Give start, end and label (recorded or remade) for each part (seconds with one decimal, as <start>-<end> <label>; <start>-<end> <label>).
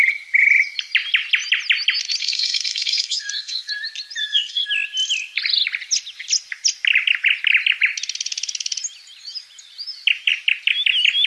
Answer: 0.0-2.2 recorded; 2.2-3.7 remade; 3.7-4.2 recorded; 4.2-4.7 remade; 4.7-11.3 recorded